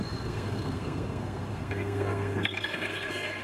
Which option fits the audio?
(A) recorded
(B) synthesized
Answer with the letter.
B